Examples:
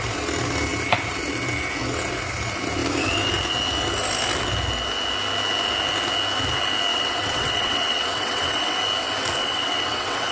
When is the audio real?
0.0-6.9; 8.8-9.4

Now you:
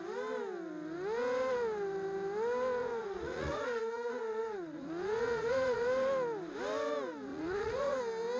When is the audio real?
0.0-2.8; 5.8-7.3; 8.0-8.4

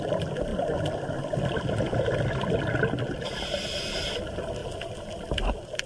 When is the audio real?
0.0-5.9